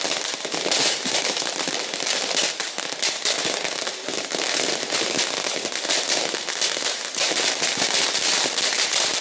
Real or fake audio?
real